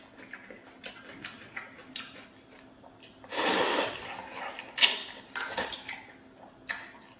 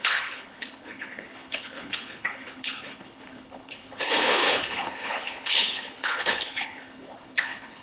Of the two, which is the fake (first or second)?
second